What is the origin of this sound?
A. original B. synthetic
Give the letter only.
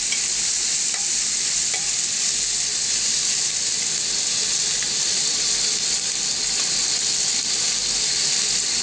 A